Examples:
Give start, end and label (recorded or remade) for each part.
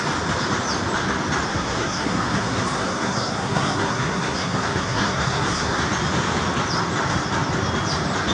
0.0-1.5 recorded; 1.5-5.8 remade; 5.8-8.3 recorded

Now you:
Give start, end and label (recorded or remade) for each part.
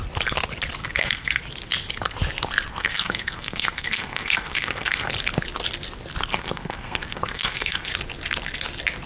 0.0-0.8 recorded; 0.8-1.4 remade; 1.4-2.7 recorded; 2.7-5.1 remade; 5.1-6.3 recorded; 6.3-7.9 remade; 7.9-9.1 recorded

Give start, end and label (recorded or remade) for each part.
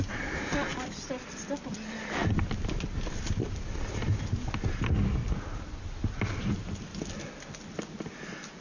0.0-8.6 recorded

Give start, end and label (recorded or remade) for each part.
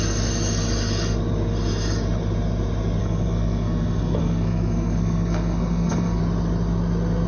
0.0-3.0 recorded; 3.0-6.2 remade; 6.2-7.3 recorded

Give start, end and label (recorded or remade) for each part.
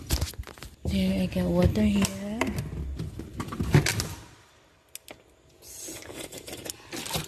0.0-7.3 recorded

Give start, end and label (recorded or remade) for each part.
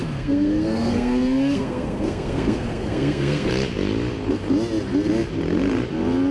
0.0-3.5 remade; 3.5-6.3 recorded